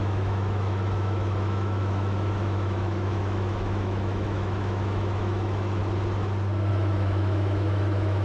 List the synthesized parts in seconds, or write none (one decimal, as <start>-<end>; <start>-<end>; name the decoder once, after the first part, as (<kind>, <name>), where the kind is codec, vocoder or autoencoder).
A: 0.0-5.8 (autoencoder, DAC-VAE); 6.7-8.2